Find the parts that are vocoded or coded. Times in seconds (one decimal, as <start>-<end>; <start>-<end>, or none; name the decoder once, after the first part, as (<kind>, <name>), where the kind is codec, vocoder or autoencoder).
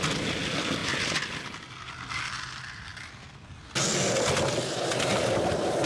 0.8-1.4 (vocoder, BigVGAN v2); 5.1-5.9